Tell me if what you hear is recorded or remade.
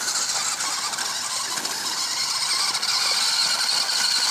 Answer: recorded